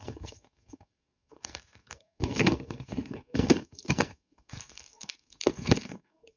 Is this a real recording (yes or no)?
no